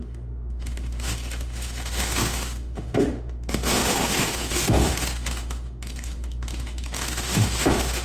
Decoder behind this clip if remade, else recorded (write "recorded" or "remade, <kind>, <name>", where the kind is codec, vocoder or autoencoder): remade, autoencoder, DAC-VAE